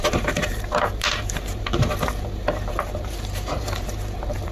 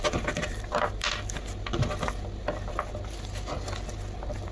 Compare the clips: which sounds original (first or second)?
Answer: second